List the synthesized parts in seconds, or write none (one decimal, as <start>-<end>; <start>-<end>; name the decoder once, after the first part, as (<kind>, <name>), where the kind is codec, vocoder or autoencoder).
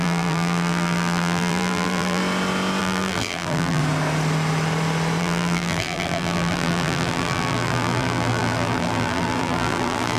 0.0-2.2 (vocoder, BigVGAN v2); 2.8-3.8; 5.2-10.2